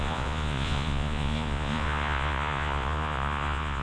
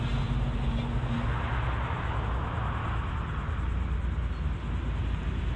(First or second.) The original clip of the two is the second